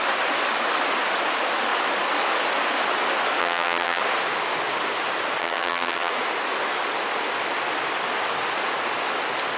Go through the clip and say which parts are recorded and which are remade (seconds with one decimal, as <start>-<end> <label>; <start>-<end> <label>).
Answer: 0.0-3.4 recorded; 3.4-4.0 remade; 4.0-5.4 recorded; 5.4-6.1 remade; 6.1-9.6 recorded